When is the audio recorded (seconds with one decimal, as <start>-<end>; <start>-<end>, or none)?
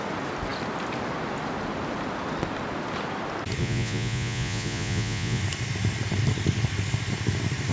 0.0-3.6; 5.4-7.7